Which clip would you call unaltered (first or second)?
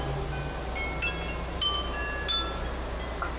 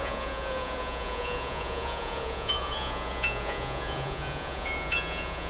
first